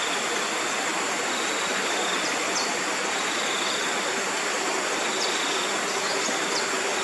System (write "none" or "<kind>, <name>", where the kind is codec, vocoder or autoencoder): none